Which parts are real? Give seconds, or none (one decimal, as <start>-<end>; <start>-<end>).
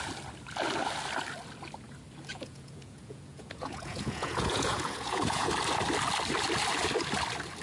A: 0.0-2.3; 5.5-7.6